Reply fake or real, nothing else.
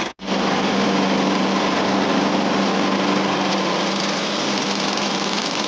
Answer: real